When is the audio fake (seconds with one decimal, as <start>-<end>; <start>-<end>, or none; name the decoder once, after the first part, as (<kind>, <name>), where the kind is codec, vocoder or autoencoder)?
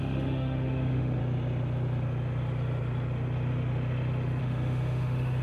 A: 0.0-1.2 (autoencoder, DAC-VAE); 4.4-5.4